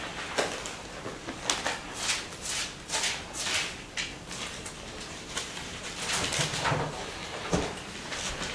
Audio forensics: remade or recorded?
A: recorded